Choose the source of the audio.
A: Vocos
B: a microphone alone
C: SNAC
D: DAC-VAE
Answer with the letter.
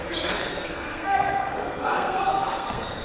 C